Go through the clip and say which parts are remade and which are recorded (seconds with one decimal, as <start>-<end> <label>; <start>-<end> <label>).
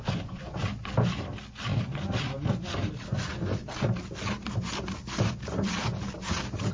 0.0-6.7 recorded